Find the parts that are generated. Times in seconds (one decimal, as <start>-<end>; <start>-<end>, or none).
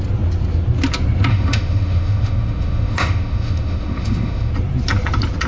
1.3-4.5